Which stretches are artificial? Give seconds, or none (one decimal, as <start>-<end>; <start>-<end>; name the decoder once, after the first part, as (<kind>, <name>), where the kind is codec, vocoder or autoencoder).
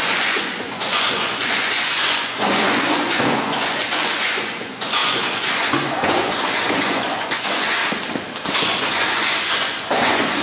0.0-7.8 (vocoder, Vocos); 8.5-10.4